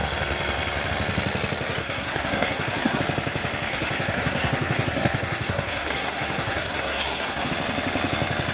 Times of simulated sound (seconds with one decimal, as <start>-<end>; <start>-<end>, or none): 1.8-3.0; 3.7-7.5